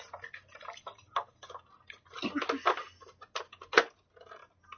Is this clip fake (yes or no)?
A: no